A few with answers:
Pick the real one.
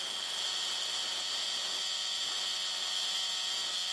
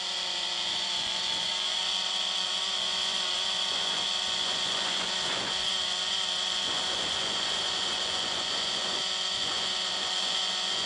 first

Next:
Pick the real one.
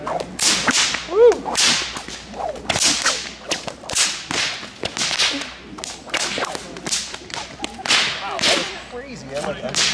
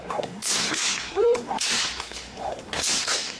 first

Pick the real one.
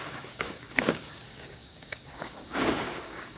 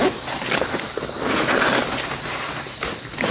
second